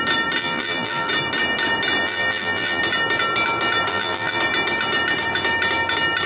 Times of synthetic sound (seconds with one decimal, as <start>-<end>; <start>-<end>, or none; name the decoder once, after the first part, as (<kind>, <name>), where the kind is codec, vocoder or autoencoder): 0.4-1.1 (vocoder, BigVGAN v2); 2.0-2.8; 3.9-4.4